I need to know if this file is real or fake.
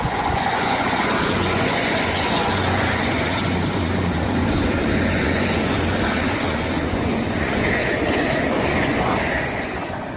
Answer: fake